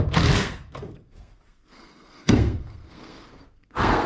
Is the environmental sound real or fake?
fake